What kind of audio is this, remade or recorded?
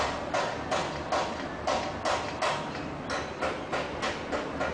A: recorded